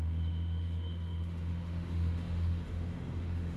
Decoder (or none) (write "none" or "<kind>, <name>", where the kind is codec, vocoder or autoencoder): autoencoder, DAC-VAE